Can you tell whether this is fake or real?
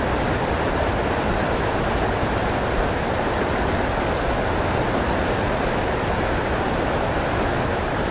real